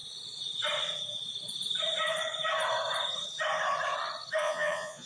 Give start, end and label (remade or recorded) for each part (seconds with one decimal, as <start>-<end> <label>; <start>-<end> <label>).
0.0-4.4 recorded; 4.4-5.1 remade